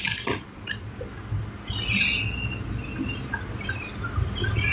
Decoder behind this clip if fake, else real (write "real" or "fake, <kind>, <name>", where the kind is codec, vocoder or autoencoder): real